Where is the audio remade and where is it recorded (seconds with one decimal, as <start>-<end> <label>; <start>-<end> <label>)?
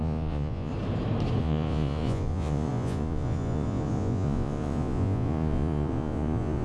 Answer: 0.0-0.7 remade; 0.7-1.4 recorded; 1.4-6.6 remade